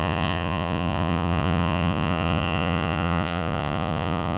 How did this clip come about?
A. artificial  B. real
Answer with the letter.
A